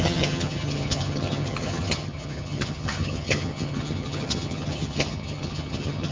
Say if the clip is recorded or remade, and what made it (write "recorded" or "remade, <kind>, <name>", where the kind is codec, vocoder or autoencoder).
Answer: remade, vocoder, HiFi-GAN